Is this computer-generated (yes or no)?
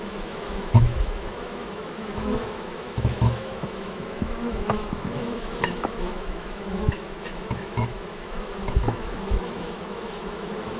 yes